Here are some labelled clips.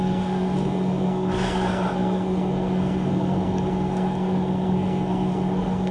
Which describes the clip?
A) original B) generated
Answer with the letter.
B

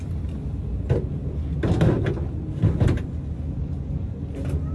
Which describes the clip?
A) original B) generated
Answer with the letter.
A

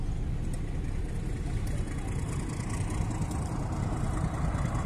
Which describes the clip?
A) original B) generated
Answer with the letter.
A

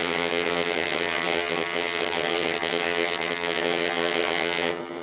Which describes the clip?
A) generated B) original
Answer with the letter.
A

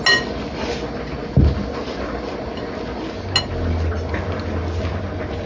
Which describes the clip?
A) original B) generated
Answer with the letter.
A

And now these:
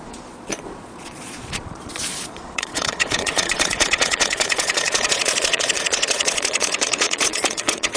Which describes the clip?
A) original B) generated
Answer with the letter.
B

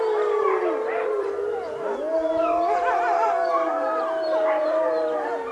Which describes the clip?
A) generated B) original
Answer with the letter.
A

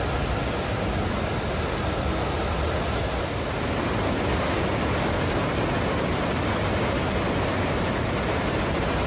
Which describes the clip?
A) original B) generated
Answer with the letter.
A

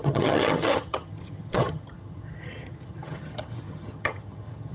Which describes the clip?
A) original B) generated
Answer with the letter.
B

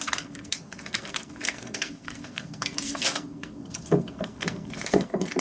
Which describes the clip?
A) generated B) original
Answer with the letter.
A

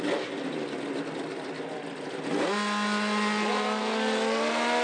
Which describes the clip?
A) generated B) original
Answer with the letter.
B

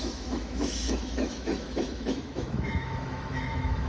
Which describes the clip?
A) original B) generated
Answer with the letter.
B